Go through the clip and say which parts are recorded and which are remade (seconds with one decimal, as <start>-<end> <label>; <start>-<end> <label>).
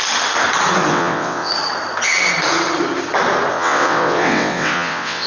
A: 0.0-0.9 recorded; 0.9-1.5 remade; 1.5-3.5 recorded; 3.5-5.3 remade